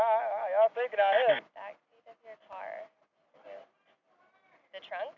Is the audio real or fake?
real